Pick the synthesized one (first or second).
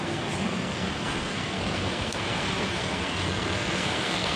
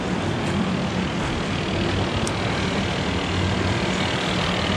first